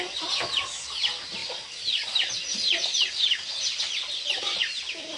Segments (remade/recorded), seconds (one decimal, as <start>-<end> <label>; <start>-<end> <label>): 0.0-5.2 recorded